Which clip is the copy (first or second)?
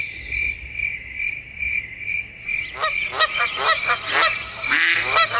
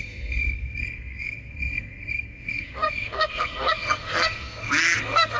second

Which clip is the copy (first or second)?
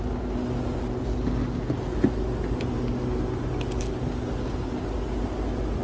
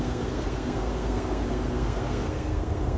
second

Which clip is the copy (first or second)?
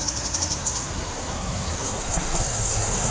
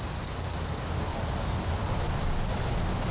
first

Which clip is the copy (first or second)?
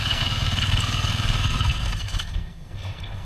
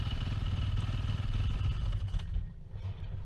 first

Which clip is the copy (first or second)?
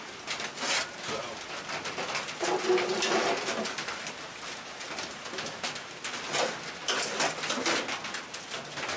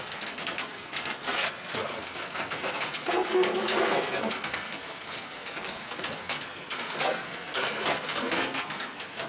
second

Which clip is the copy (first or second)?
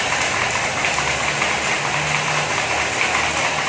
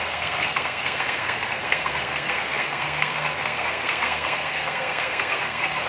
second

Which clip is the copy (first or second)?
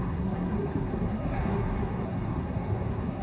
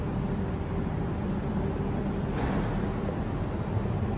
first